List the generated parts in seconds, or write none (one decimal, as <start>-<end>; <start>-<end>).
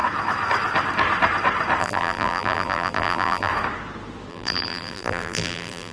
1.8-3.5; 4.3-5.9